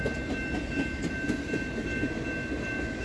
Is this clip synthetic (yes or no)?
no